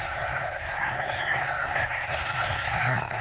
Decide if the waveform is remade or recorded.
remade